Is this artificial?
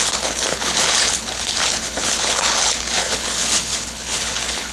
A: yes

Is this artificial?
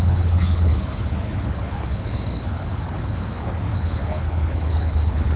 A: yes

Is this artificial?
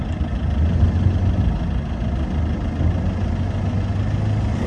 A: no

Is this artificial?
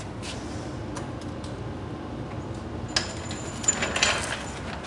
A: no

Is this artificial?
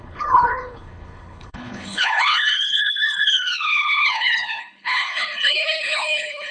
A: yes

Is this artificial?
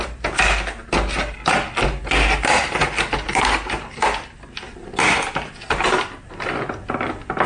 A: no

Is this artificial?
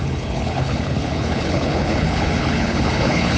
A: yes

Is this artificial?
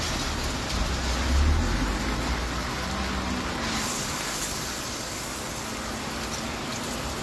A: no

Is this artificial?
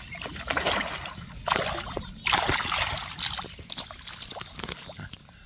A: no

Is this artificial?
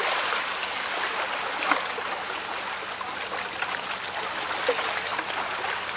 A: no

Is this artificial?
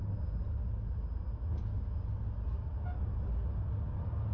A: no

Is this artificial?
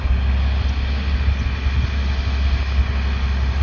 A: no